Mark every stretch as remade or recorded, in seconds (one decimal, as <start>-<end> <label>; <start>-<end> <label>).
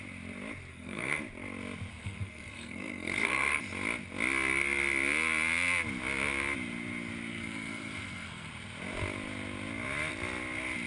0.0-0.7 recorded; 0.7-1.2 remade; 1.2-1.9 recorded; 1.9-3.6 remade; 3.6-7.3 recorded; 7.3-8.5 remade; 8.5-10.9 recorded